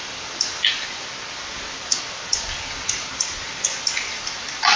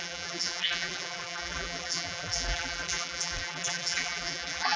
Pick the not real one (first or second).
second